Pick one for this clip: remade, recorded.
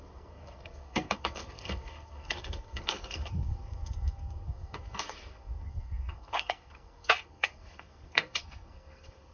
remade